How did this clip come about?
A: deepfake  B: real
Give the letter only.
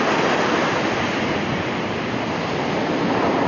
B